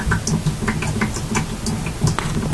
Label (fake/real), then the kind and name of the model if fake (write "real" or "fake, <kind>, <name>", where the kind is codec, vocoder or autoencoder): real